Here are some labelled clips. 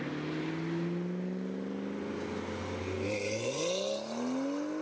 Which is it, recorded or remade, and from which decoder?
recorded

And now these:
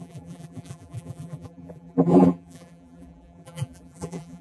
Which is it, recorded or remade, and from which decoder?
remade, vocoder, BigVGAN v2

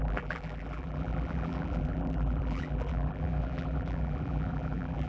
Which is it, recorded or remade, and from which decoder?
remade, vocoder, BigVGAN v2